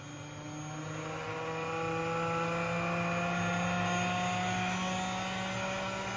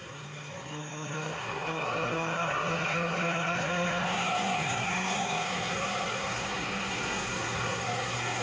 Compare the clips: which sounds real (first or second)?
first